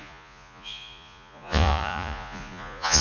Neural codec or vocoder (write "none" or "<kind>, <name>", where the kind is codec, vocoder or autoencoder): vocoder, Vocos